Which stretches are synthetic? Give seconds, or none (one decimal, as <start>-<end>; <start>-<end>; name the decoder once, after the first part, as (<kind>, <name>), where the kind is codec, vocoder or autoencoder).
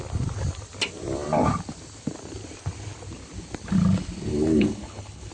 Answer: 4.3-5.3 (codec, HILCodec)